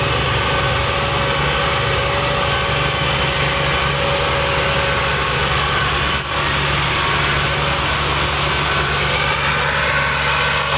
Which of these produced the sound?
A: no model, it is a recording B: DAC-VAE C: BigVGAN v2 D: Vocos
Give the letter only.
A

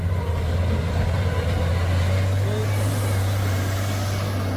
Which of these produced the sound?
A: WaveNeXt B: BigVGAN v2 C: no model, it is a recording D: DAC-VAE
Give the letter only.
C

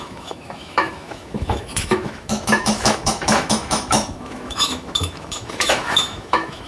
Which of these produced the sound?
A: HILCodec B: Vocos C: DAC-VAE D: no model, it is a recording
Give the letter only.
C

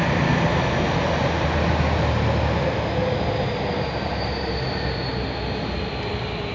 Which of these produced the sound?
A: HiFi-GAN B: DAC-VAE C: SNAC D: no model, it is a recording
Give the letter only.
D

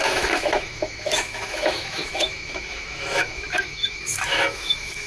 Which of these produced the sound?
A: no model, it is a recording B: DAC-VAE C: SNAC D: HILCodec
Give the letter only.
B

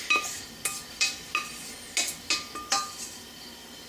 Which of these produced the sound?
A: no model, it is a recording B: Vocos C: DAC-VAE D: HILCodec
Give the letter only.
A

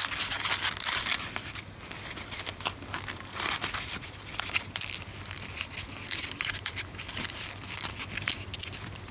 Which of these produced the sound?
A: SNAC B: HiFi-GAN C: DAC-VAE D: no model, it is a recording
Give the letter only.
D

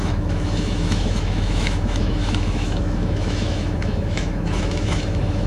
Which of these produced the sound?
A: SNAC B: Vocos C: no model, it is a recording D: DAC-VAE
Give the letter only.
D